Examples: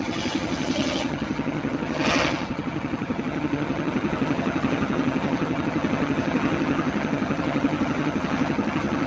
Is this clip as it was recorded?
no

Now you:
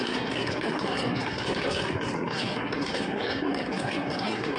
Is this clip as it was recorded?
no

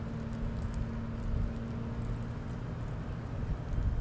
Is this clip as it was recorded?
yes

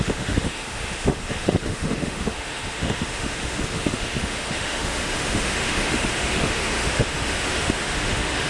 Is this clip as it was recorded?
no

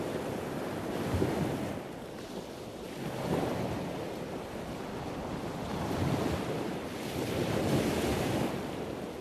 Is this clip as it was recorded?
yes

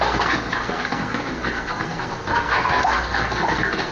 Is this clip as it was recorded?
no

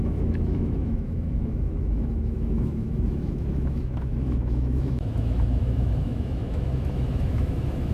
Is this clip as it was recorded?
no